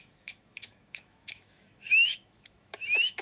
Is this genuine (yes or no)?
no